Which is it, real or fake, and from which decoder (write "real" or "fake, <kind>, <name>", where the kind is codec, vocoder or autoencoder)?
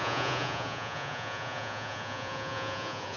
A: fake, vocoder, Vocos